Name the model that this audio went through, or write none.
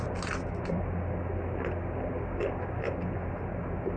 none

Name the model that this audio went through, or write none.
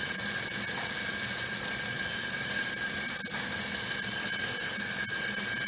none